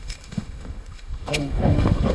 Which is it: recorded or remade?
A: remade